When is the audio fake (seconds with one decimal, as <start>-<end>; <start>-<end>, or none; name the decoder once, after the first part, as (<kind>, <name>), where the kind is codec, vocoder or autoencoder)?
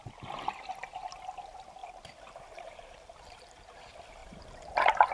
0.0-0.5 (vocoder, BigVGAN v2); 1.8-3.8; 4.2-5.1